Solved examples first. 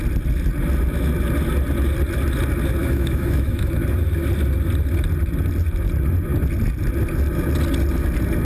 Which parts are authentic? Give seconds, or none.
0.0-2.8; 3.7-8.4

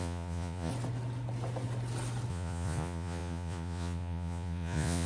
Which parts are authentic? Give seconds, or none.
0.7-2.3

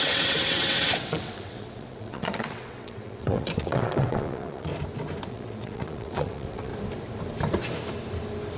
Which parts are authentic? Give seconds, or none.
4.7-5.3; 6.7-8.6

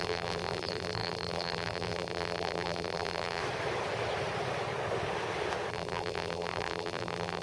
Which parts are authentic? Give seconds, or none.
3.4-5.7

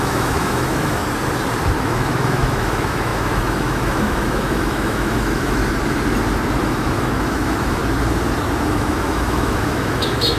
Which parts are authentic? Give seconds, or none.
1.0-1.8; 5.6-6.6; 7.8-8.6

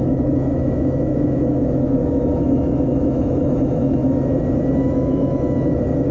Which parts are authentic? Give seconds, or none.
4.0-4.8